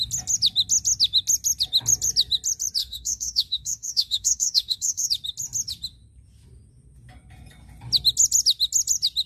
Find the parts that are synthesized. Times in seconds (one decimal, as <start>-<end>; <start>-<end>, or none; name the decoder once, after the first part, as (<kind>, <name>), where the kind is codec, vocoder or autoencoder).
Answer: 2.8-5.1 (autoencoder, DAC-VAE)